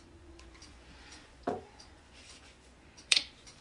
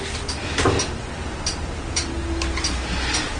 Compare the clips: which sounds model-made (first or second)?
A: first